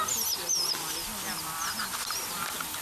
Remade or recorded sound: recorded